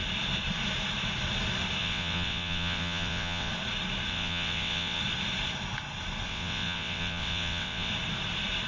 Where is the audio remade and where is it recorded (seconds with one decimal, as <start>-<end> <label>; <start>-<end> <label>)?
0.0-1.8 recorded; 1.8-3.5 remade; 3.5-4.1 recorded; 4.1-5.0 remade; 5.0-6.3 recorded; 6.3-7.9 remade; 7.9-8.7 recorded